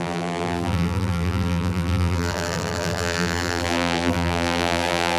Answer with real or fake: fake